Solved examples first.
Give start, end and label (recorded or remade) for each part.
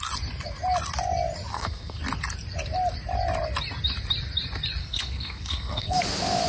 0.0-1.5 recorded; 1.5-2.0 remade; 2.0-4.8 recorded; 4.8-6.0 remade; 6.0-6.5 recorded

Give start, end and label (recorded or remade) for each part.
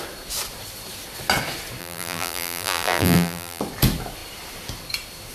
0.0-1.8 recorded; 1.8-3.6 remade; 3.6-5.3 recorded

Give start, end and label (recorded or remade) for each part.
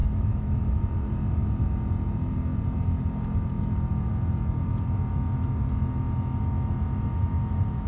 0.0-0.8 remade; 0.8-7.1 recorded; 7.1-7.9 remade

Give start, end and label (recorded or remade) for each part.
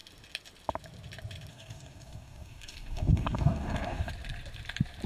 0.0-1.5 recorded; 1.5-4.1 remade; 4.1-5.1 recorded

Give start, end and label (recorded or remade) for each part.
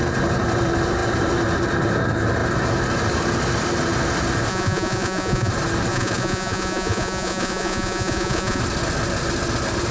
0.0-4.5 recorded; 4.5-5.5 remade; 5.5-5.9 recorded; 5.9-8.6 remade; 8.6-9.9 recorded